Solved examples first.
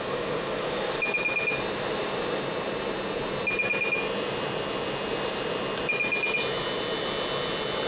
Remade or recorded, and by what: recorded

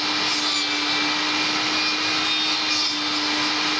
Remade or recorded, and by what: recorded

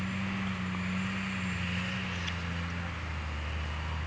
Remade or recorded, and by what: recorded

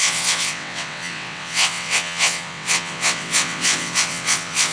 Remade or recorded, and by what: remade, vocoder, WaveNeXt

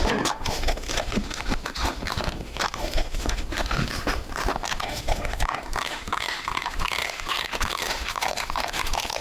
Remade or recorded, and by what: remade, autoencoder, DAC-VAE